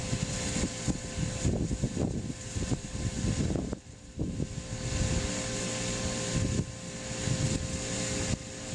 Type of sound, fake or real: real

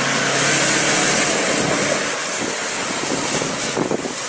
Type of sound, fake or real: real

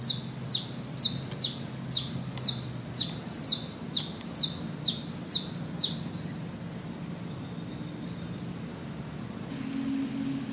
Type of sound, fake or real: real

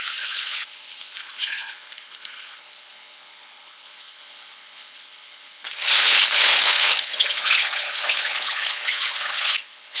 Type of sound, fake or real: fake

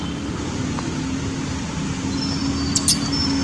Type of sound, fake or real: real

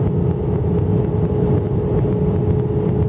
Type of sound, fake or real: real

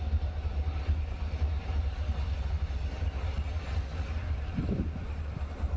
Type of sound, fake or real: real